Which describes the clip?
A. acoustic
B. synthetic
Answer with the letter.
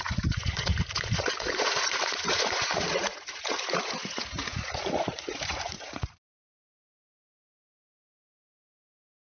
B